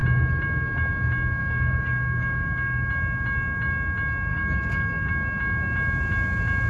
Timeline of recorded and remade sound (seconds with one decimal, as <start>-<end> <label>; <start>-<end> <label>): 0.0-1.4 recorded; 1.4-2.9 remade; 2.9-4.3 recorded; 4.3-5.1 remade; 5.1-6.7 recorded